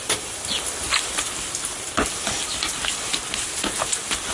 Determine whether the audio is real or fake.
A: real